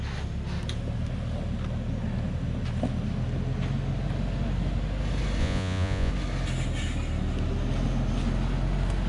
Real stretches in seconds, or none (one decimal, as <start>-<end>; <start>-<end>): 0.0-5.4; 6.1-9.1